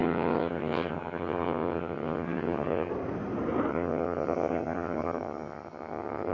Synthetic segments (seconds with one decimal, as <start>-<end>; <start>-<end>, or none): 0.0-2.9; 3.7-6.3